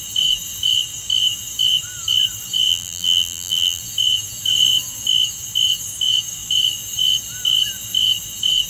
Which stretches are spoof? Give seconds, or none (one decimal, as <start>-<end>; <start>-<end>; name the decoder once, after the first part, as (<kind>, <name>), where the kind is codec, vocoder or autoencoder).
2.7-3.8 (vocoder, BigVGAN v2)